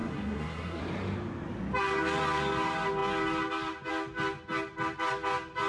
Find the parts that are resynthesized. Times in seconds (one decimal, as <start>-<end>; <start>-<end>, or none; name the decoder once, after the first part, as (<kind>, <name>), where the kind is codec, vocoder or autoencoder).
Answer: 0.0-0.8 (codec, SNAC)